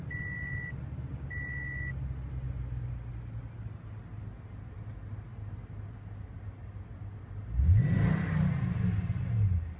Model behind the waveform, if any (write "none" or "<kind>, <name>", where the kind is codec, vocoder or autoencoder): none